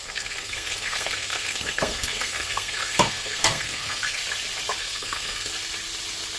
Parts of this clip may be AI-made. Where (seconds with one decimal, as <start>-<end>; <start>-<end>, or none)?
0.0-4.2; 4.8-5.5

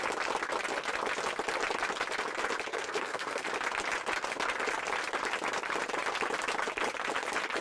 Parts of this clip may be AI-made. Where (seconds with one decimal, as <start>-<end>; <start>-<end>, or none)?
2.7-3.5

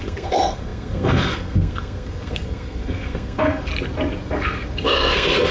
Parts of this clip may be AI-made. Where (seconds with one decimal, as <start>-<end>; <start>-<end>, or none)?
0.0-3.7; 4.2-5.5

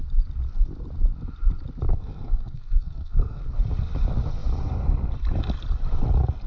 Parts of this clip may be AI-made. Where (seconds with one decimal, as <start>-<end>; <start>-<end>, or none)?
1.9-3.4

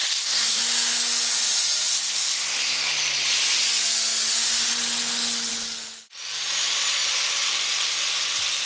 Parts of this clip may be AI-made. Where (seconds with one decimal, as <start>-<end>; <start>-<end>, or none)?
0.0-0.6; 1.9-2.9

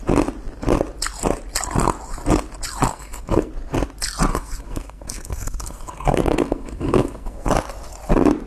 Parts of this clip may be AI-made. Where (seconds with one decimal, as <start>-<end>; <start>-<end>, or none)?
2.9-3.5; 4.3-7.5